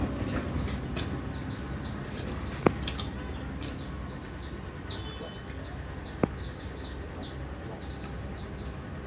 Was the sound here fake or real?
real